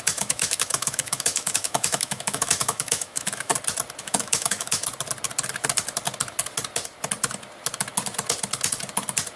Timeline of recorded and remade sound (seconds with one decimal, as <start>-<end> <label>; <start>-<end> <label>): 0.0-3.5 remade; 3.5-4.0 recorded; 4.0-4.8 remade; 4.8-9.4 recorded

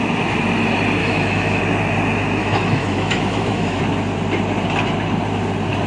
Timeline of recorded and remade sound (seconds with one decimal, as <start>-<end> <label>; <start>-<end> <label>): 0.0-1.0 recorded; 1.0-1.6 remade; 1.6-2.4 recorded; 2.4-3.8 remade; 3.8-5.9 recorded

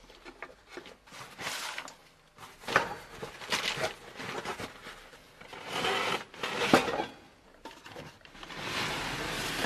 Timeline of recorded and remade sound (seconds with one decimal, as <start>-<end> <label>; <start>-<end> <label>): 0.0-9.7 recorded

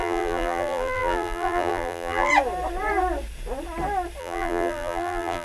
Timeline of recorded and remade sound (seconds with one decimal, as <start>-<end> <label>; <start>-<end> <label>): 0.0-2.3 remade; 2.3-4.2 recorded; 4.2-5.4 remade

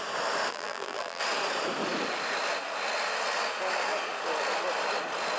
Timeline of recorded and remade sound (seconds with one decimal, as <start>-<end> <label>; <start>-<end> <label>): 0.0-0.5 recorded; 0.5-1.2 remade; 1.2-5.4 recorded

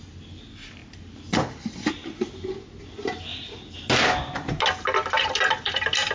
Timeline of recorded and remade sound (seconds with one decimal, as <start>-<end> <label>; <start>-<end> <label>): 0.0-3.3 recorded; 3.3-4.5 remade; 4.5-6.1 recorded